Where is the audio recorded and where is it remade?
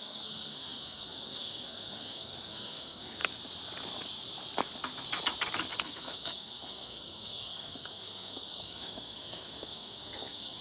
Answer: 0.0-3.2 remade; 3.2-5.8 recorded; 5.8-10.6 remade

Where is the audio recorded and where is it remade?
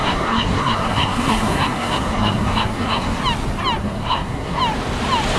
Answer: 0.0-3.2 remade; 3.2-3.8 recorded; 3.8-4.6 remade; 4.6-5.4 recorded